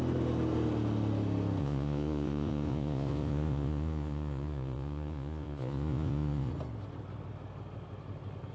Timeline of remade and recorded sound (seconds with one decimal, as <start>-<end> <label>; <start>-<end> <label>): 0.0-1.6 recorded; 1.6-6.5 remade; 6.5-8.5 recorded